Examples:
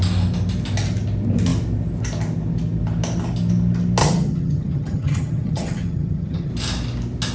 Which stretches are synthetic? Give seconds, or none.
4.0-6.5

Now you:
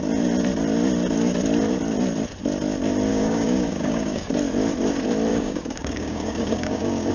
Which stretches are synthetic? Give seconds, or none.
3.1-4.3; 5.3-7.1

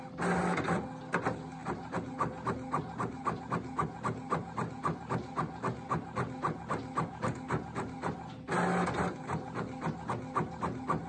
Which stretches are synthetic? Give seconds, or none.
none

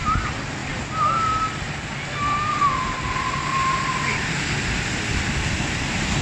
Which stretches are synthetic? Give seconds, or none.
none

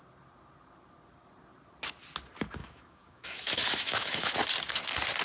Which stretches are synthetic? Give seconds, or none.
2.6-4.3

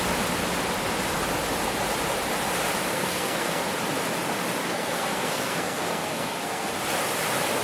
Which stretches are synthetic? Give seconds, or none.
2.9-3.6; 4.6-6.7

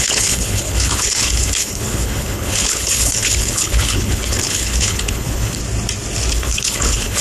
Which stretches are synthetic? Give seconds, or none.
0.0-5.6; 6.3-7.2

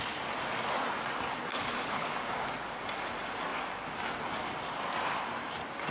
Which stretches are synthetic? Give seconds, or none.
1.5-2.1